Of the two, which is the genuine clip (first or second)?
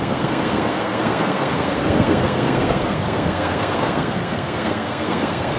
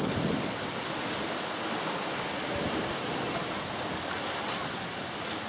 second